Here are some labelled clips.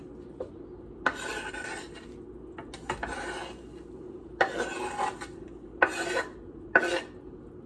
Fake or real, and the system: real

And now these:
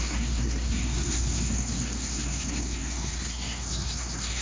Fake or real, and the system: fake, codec, SNAC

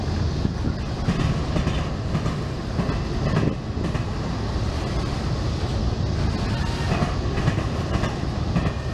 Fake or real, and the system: real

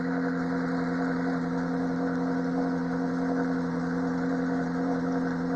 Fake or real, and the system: real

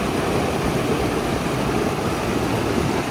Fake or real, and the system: real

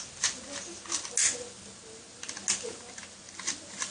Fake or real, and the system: real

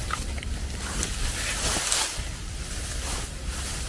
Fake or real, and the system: real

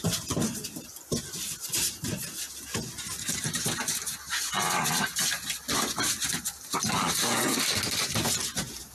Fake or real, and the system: real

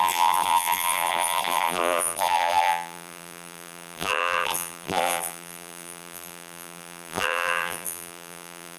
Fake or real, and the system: fake, vocoder, BigVGAN v2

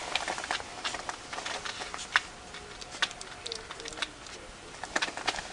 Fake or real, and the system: real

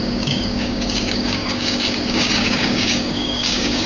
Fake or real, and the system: fake, codec, DAC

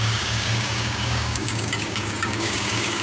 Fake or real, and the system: fake, codec, DAC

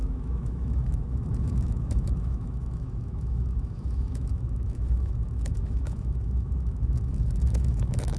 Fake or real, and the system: fake, autoencoder, DAC-VAE